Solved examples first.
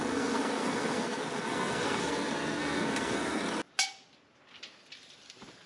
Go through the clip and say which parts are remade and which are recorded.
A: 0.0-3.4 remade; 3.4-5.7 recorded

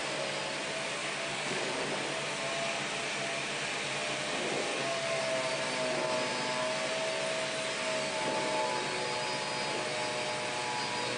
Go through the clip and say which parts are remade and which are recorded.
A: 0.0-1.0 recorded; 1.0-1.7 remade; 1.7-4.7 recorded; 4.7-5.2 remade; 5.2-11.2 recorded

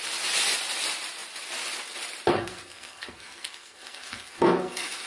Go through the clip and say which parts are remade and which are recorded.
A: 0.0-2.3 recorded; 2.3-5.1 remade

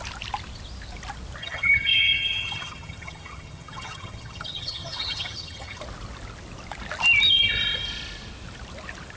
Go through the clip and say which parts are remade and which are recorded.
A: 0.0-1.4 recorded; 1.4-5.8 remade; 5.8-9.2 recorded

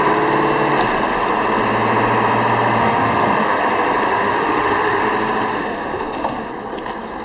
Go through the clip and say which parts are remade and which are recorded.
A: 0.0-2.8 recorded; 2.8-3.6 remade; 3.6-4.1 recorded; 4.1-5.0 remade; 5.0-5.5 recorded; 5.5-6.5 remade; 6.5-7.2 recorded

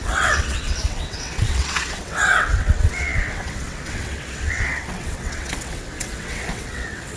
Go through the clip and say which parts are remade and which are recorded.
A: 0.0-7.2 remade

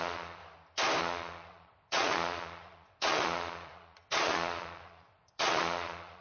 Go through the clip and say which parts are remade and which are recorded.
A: 0.0-0.4 remade; 0.4-1.0 recorded; 1.0-6.2 remade